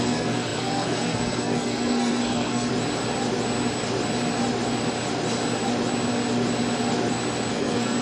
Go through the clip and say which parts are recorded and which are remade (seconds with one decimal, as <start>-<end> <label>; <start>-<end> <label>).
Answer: 0.0-2.7 remade; 2.7-7.5 recorded; 7.5-8.0 remade

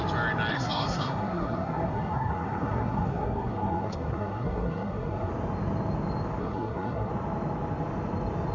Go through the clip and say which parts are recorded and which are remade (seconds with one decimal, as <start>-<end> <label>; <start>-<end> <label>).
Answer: 0.0-0.5 recorded; 0.5-5.3 remade; 5.3-6.4 recorded; 6.4-7.1 remade; 7.1-8.5 recorded